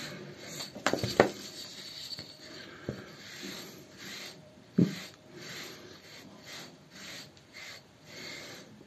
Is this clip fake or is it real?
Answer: fake